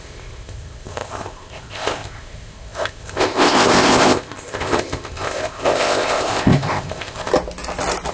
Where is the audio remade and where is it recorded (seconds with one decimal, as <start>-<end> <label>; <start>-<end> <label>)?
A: 0.0-7.3 remade; 7.3-8.1 recorded